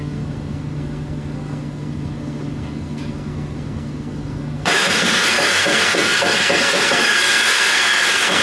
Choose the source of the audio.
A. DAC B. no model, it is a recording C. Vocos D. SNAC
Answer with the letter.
D